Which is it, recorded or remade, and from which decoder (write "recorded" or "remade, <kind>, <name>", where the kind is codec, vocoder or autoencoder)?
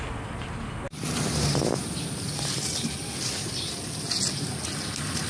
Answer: recorded